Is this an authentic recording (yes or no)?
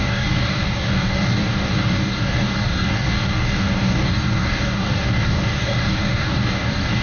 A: no